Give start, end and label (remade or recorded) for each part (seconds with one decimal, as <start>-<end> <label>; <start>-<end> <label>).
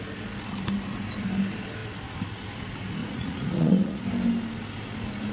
0.0-3.0 recorded; 3.0-4.0 remade; 4.0-5.3 recorded